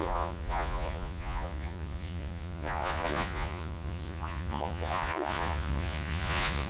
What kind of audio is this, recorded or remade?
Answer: remade